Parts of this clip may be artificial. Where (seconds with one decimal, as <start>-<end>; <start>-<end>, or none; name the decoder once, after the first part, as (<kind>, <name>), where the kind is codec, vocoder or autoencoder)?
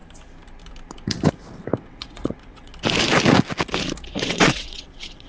1.8-2.7 (vocoder, WaveNeXt); 4.1-5.3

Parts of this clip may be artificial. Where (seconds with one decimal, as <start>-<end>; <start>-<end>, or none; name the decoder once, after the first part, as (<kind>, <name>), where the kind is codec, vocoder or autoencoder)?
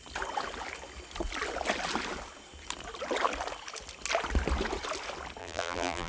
5.4-6.1 (vocoder, BigVGAN v2)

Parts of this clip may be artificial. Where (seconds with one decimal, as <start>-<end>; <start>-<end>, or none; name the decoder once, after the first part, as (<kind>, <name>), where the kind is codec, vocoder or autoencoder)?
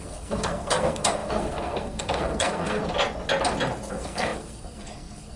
0.0-2.8 (codec, SNAC); 3.9-5.4